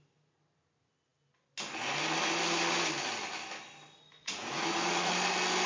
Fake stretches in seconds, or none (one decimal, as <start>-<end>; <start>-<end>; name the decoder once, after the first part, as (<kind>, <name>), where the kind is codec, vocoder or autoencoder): 4.2-5.1 (vocoder, Vocos)